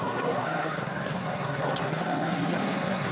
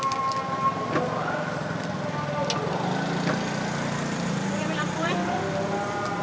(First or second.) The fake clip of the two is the first